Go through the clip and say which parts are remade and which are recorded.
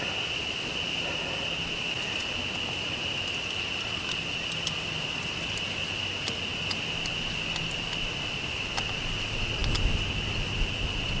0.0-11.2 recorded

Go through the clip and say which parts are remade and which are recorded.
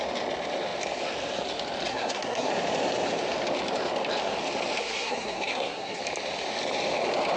0.0-1.9 recorded; 1.9-2.5 remade; 2.5-4.8 recorded; 4.8-6.0 remade; 6.0-7.4 recorded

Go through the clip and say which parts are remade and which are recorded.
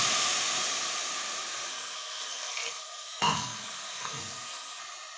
0.0-1.7 recorded; 1.7-4.8 remade; 4.8-5.2 recorded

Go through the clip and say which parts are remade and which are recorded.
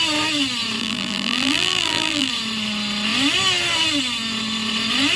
0.0-0.8 recorded; 0.8-2.3 remade; 2.3-5.2 recorded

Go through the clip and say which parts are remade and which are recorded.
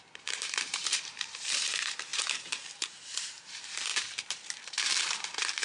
0.0-5.6 remade